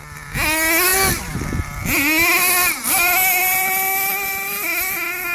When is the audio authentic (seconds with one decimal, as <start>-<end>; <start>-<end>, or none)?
0.0-5.3